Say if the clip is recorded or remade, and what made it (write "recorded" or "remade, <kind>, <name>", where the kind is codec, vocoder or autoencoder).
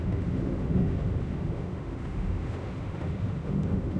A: remade, autoencoder, DAC-VAE